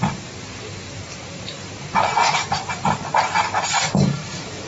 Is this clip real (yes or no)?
no